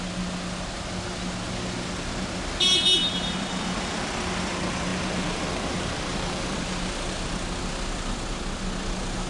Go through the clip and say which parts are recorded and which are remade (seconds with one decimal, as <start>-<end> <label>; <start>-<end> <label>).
0.0-3.0 recorded; 3.0-3.6 remade; 3.6-4.9 recorded; 4.9-6.6 remade; 6.6-9.3 recorded